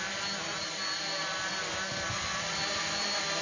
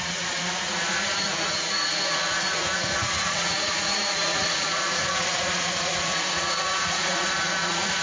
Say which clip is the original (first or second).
first